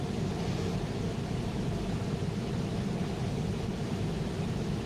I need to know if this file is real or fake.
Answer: real